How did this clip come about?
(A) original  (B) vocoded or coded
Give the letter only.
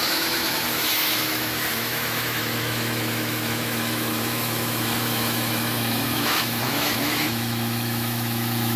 B